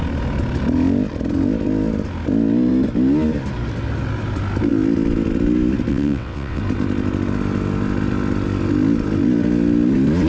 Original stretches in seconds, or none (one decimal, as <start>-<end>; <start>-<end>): 0.0-5.9; 6.6-10.3